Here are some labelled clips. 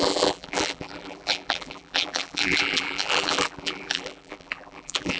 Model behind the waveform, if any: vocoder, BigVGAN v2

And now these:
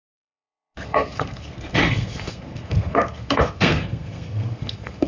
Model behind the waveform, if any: codec, SNAC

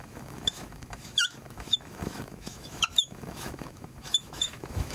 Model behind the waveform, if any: autoencoder, DAC-VAE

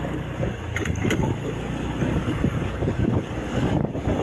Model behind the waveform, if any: codec, DAC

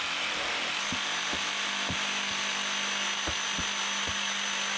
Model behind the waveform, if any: none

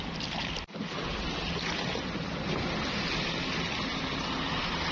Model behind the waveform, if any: none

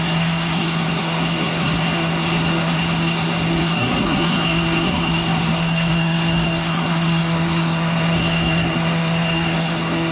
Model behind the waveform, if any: codec, SNAC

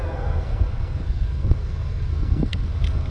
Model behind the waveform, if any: codec, SNAC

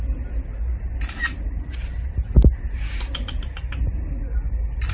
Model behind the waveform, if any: none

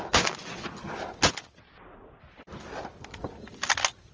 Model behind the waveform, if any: none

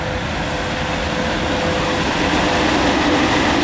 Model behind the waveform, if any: none